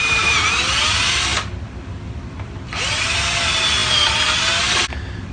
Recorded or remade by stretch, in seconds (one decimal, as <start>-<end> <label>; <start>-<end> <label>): 0.0-5.3 recorded